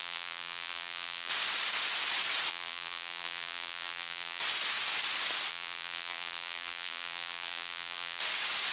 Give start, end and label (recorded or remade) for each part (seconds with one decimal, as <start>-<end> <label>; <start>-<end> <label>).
0.0-1.3 remade; 1.3-2.5 recorded; 2.5-4.4 remade; 4.4-5.5 recorded; 5.5-8.2 remade; 8.2-8.7 recorded